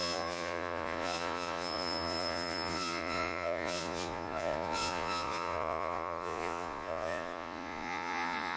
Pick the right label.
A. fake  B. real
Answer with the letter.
A